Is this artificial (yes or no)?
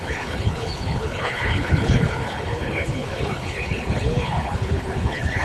yes